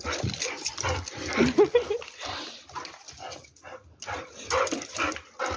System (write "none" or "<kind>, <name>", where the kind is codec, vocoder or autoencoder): none